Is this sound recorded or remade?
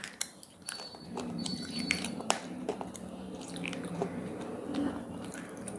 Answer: remade